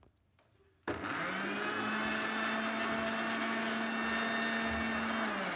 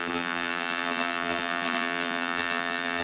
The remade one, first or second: second